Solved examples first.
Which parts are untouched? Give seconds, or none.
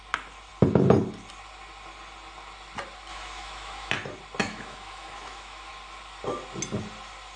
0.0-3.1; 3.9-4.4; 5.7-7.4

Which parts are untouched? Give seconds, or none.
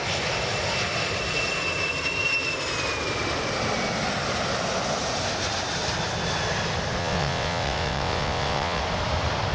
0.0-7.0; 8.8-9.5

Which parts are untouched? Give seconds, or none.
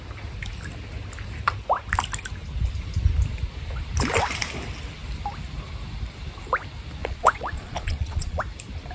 0.0-7.0; 8.4-8.9